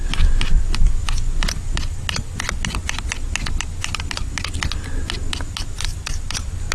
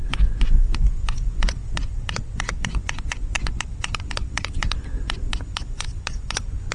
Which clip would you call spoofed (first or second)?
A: second